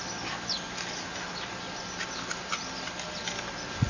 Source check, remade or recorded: recorded